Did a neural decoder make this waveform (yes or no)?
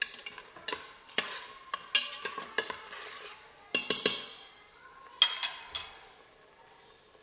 no